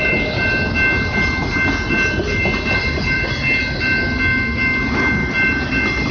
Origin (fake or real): real